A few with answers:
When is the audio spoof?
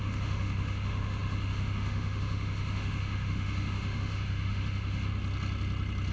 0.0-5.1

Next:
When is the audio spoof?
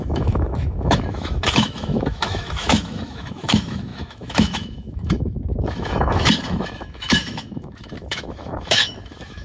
0.0-9.4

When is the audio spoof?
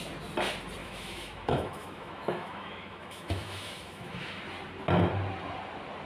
0.8-4.4